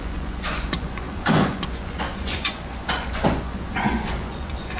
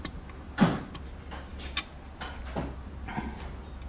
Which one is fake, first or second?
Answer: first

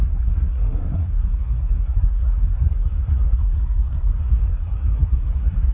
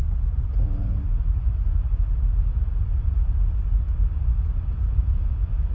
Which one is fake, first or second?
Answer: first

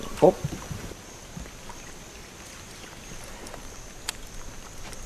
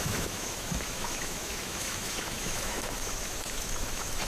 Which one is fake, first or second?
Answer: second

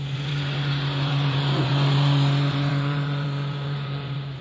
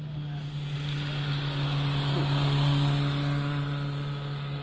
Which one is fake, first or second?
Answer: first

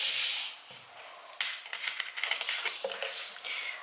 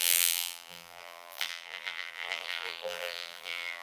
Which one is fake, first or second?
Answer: second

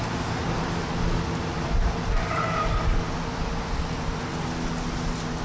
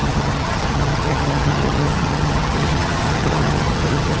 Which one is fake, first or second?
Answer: second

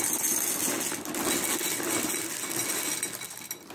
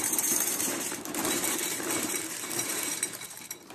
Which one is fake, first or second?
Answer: second